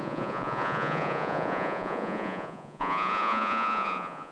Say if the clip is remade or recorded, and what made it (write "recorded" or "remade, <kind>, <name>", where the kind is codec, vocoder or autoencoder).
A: remade, vocoder, Vocos